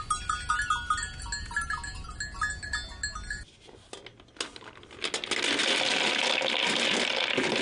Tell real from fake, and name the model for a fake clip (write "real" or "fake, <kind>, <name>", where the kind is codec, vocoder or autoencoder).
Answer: real